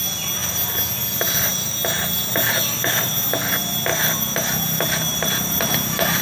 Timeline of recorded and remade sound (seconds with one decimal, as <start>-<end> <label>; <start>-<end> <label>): 0.0-3.9 recorded; 3.9-4.5 remade; 4.5-5.1 recorded; 5.1-5.6 remade; 5.6-6.2 recorded